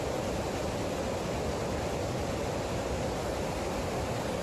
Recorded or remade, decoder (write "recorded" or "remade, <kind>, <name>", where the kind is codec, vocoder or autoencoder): recorded